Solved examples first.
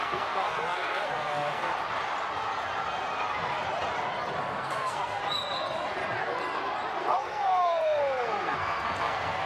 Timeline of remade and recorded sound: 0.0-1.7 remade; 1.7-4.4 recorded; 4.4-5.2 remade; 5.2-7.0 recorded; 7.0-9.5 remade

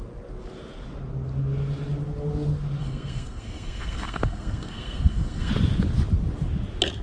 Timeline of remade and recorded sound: 0.0-2.8 recorded; 2.8-5.5 remade; 5.5-7.0 recorded

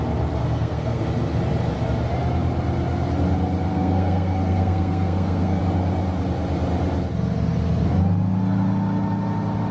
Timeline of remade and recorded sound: 0.0-0.4 recorded; 0.4-1.0 remade; 1.0-3.7 recorded; 3.7-5.6 remade; 5.6-9.7 recorded